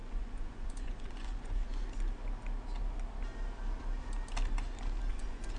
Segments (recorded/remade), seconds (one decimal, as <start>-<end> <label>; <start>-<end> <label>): 0.0-1.7 remade; 1.7-5.1 recorded; 5.1-5.6 remade